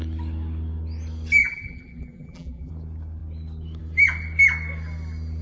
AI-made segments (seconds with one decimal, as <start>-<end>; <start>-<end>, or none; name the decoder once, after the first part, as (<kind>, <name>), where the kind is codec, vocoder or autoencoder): 1.4-2.7 (vocoder, BigVGAN v2)